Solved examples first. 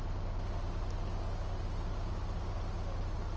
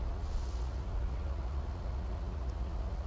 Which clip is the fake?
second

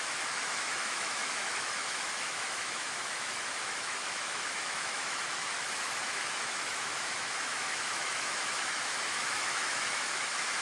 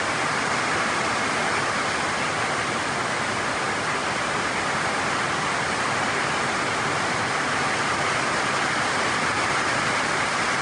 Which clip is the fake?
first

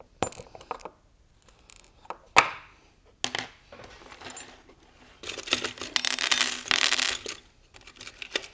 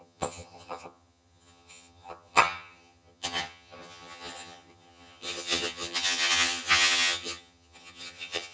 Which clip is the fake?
second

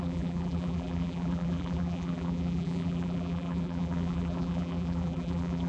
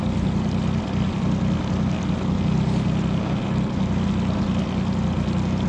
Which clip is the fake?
first